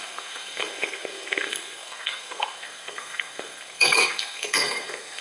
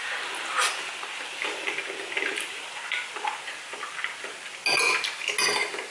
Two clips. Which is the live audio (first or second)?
second